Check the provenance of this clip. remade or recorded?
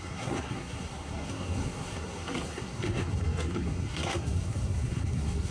remade